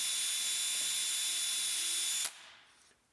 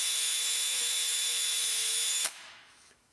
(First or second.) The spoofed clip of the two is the second